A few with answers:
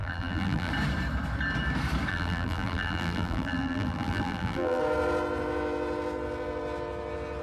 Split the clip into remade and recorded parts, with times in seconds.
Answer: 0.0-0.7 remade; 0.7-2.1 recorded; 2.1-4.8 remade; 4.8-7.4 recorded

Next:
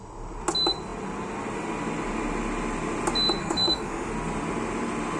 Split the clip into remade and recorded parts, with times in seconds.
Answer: 0.0-3.4 recorded; 3.4-4.1 remade; 4.1-5.2 recorded

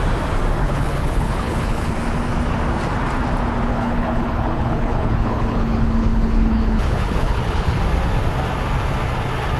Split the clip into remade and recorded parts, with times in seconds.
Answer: 0.0-0.6 recorded; 0.6-1.9 remade; 1.9-3.7 recorded; 3.7-7.8 remade; 7.8-9.6 recorded

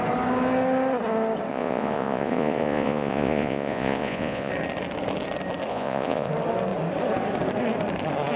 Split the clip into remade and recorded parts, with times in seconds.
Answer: 0.0-1.5 recorded; 1.5-4.5 remade; 4.5-5.7 recorded; 5.7-6.3 remade; 6.3-8.4 recorded

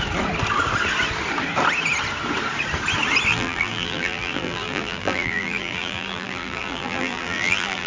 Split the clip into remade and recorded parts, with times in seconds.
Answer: 0.0-3.3 recorded; 3.3-7.9 remade

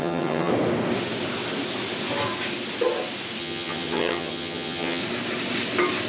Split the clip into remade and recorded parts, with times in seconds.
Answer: 0.0-0.5 remade; 0.5-3.4 recorded; 3.4-5.0 remade; 5.0-6.1 recorded

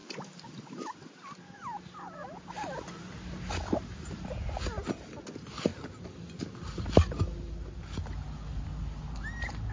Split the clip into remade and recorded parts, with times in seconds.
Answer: 0.0-1.1 remade; 1.1-9.7 recorded